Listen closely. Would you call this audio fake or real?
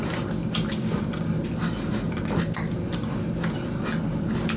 real